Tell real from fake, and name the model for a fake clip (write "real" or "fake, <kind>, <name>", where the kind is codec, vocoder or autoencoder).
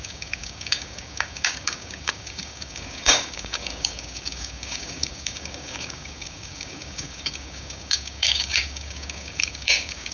fake, codec, DAC